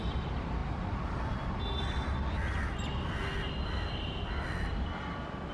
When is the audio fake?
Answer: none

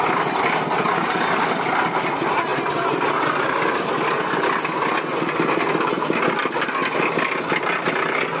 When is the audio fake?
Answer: none